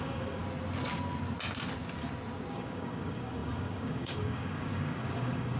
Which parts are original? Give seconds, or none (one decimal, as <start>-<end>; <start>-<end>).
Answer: 0.4-2.5

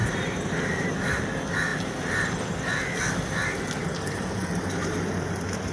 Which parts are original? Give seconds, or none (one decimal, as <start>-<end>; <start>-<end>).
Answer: 0.9-5.7